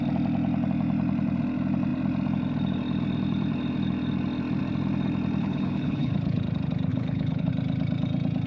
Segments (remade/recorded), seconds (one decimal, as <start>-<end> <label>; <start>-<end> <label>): 0.0-5.4 recorded; 5.4-6.4 remade; 6.4-6.9 recorded; 6.9-7.5 remade; 7.5-8.5 recorded